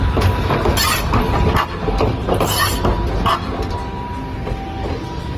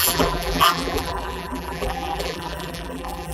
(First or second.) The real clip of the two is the first